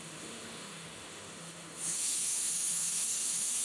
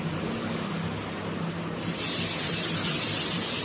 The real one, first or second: second